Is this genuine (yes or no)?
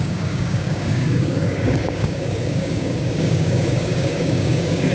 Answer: no